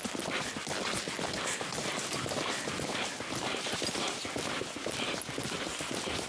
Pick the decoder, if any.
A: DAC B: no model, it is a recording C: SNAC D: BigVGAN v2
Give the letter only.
B